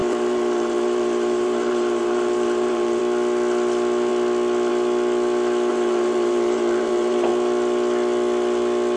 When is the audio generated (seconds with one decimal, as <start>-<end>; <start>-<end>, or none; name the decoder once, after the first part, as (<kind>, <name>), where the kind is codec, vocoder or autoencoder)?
0.0-3.0 (vocoder, BigVGAN v2); 5.7-7.3

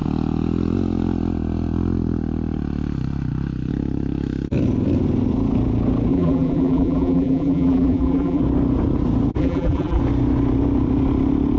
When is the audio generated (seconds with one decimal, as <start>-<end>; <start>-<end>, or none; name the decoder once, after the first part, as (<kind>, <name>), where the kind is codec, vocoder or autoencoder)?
6.1-8.4 (vocoder, BigVGAN v2); 9.4-10.0

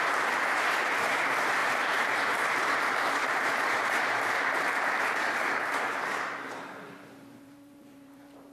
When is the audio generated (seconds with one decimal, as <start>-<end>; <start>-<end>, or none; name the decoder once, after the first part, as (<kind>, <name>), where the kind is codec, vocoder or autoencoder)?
0.0-8.5 (vocoder, BigVGAN v2)

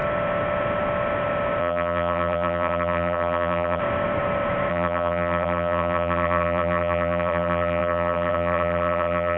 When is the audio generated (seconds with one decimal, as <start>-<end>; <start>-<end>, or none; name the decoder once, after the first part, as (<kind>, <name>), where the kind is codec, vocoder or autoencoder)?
1.6-3.8 (vocoder, BigVGAN v2); 4.7-9.4